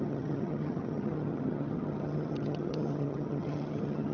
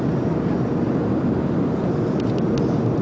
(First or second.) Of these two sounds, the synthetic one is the first